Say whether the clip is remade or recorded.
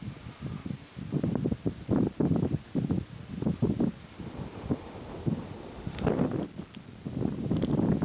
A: recorded